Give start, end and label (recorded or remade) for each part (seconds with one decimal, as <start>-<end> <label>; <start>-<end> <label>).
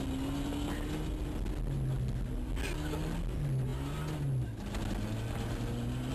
0.0-6.1 recorded